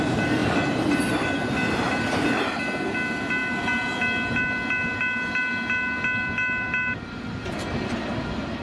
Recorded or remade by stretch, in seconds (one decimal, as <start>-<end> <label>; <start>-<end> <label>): 0.0-8.6 recorded